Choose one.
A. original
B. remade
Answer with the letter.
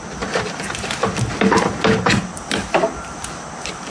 A